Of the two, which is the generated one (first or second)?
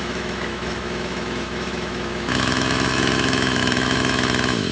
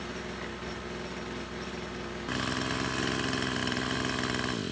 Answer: first